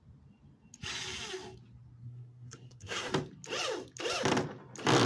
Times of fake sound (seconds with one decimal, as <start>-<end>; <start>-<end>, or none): 2.0-3.1